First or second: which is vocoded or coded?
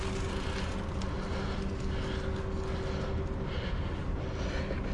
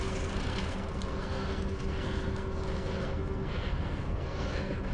second